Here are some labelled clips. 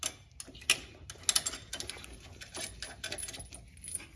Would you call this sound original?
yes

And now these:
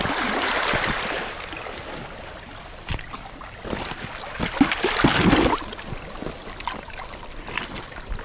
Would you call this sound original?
yes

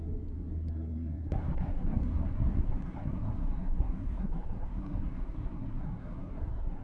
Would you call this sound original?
no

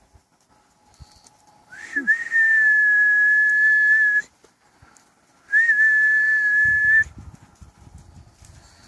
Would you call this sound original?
yes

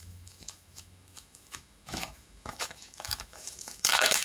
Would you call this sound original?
no